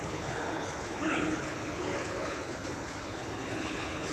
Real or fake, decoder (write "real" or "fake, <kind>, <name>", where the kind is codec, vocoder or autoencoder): fake, codec, HILCodec